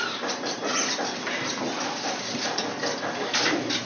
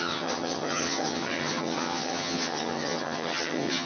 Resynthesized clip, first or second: second